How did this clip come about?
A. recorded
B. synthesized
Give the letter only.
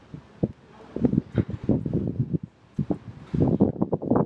A